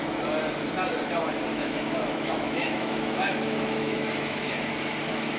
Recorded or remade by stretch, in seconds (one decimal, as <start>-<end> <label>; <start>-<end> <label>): 0.0-1.5 recorded; 1.5-4.7 remade; 4.7-5.4 recorded

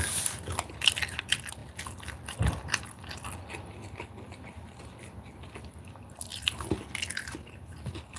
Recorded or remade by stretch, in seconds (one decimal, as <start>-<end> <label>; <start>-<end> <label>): 0.0-8.2 recorded

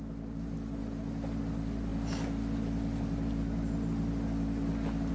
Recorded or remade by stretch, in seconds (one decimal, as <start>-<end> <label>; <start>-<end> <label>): 0.0-5.1 recorded

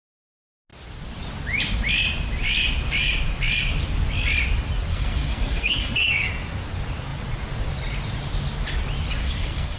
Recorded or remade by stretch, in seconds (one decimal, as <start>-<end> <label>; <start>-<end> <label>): 0.0-4.9 recorded; 4.9-6.3 remade; 6.3-9.2 recorded; 9.2-9.8 remade

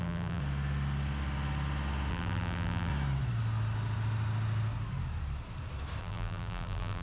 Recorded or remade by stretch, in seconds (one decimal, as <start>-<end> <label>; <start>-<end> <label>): 0.0-0.4 remade; 0.4-2.1 recorded; 2.1-2.9 remade; 2.9-6.0 recorded; 6.0-7.0 remade

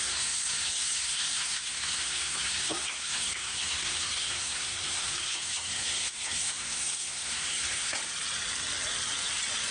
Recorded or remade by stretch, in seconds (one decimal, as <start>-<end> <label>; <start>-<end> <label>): 0.0-8.0 remade; 8.0-9.7 recorded

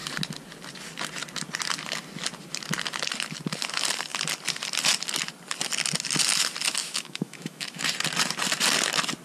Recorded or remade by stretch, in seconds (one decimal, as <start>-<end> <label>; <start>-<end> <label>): 0.0-6.8 recorded; 6.8-7.8 remade; 7.8-9.2 recorded

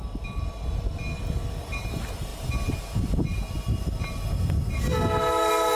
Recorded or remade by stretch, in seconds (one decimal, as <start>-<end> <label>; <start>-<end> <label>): 0.0-5.7 recorded